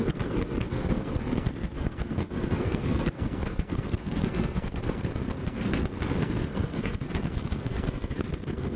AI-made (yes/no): yes